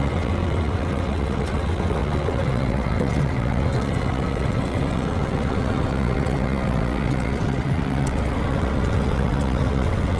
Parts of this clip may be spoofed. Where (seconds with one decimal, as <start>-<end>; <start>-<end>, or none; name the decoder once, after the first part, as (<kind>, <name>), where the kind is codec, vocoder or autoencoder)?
0.0-10.2 (vocoder, WaveNeXt)

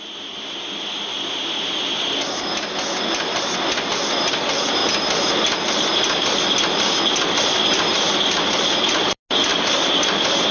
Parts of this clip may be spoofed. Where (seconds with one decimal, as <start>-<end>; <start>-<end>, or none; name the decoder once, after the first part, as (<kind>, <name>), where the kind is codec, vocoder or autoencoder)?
none

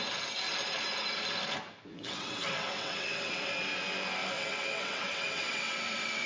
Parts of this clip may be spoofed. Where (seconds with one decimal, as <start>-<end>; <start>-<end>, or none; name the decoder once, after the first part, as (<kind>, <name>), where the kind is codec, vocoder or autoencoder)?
1.9-3.5 (vocoder, WaveNeXt); 4.2-6.3

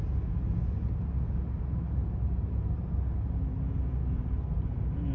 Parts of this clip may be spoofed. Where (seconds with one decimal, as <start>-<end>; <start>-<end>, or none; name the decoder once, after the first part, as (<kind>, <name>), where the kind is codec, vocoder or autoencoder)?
none